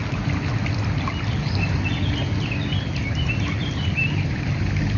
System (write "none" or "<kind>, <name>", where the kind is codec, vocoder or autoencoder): none